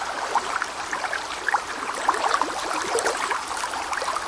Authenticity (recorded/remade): remade